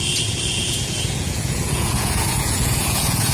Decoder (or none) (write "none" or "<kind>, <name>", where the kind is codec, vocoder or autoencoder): vocoder, Vocos